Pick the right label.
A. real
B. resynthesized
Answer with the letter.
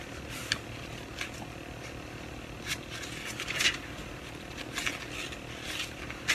A